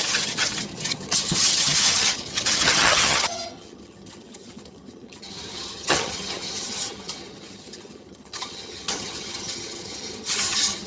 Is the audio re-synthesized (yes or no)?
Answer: yes